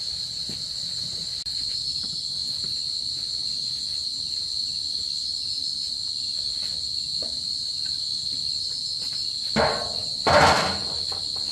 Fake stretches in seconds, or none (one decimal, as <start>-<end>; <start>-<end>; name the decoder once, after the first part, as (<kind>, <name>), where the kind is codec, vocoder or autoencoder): 0.0-2.4 (vocoder, BigVGAN v2); 6.5-7.9; 8.6-11.5